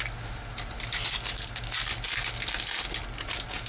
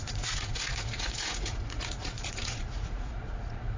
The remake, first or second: second